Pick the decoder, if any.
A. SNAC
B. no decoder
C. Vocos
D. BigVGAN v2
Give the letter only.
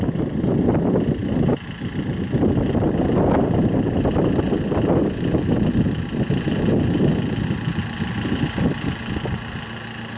B